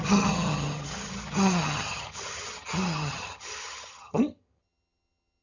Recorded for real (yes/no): no